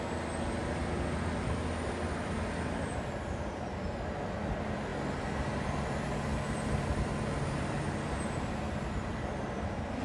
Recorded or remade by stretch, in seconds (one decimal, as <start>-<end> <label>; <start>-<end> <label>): 0.0-10.0 recorded